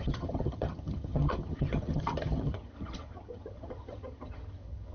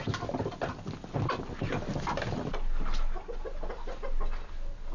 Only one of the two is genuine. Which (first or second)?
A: second